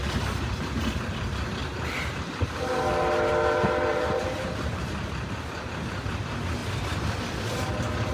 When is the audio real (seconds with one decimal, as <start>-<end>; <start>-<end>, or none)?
0.0-1.6; 3.3-3.9; 4.9-8.1